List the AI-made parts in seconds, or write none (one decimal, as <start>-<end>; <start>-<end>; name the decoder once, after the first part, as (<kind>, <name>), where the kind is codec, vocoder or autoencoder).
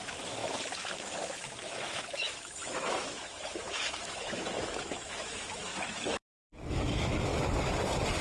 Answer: 0.0-7.3 (autoencoder, DAC-VAE)